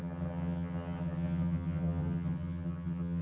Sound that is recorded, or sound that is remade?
remade